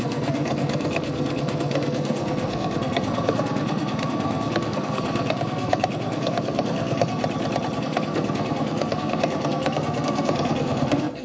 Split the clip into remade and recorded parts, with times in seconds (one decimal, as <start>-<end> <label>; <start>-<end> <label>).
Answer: 0.0-7.2 remade; 7.2-7.8 recorded; 7.8-11.2 remade